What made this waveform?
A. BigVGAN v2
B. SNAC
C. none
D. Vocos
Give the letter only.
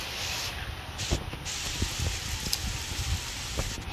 C